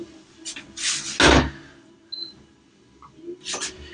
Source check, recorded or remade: recorded